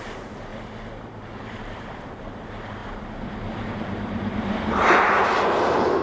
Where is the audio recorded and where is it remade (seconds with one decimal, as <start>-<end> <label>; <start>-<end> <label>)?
0.0-0.5 remade; 0.5-1.1 recorded; 1.1-2.8 remade; 2.8-3.7 recorded; 3.7-6.0 remade